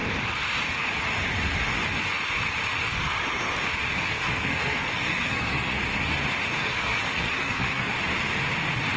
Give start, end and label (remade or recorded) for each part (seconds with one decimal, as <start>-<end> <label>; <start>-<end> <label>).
0.0-3.9 recorded; 3.9-5.8 remade; 5.8-6.6 recorded; 6.6-7.9 remade; 7.9-9.0 recorded